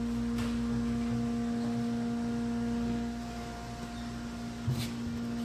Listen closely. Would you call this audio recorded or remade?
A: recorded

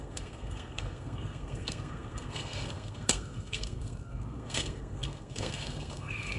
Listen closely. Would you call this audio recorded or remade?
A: remade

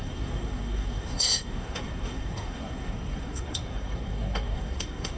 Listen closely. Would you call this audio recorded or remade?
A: remade